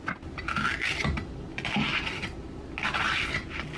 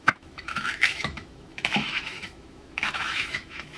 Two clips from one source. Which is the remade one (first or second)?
second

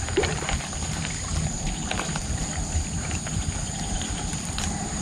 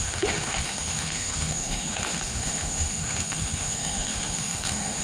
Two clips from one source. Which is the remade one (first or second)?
second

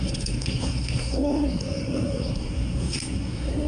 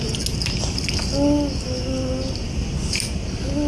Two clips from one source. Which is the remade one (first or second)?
first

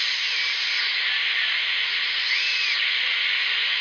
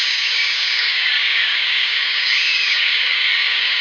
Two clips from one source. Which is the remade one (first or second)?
second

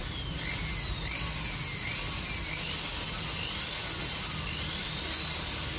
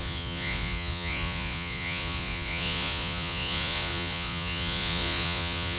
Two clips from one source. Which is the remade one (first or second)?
second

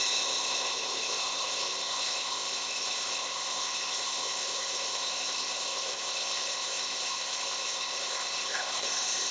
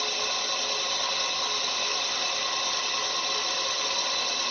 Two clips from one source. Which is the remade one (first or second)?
first